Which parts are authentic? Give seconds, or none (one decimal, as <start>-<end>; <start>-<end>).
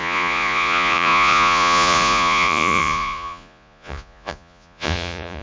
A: none